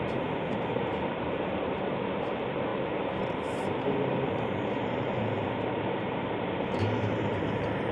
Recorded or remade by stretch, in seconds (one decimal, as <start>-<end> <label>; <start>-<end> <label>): 0.0-7.9 remade